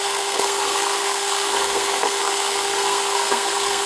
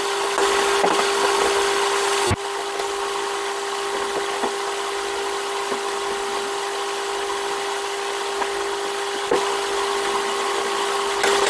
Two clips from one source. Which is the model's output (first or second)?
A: first